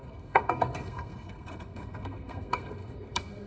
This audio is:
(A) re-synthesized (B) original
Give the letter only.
A